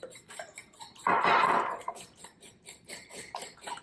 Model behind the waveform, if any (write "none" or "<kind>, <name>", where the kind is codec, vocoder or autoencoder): none